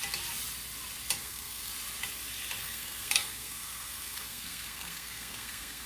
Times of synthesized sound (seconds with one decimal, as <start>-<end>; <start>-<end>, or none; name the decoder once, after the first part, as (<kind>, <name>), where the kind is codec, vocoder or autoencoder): 1.2-1.7 (codec, SNAC); 2.6-5.9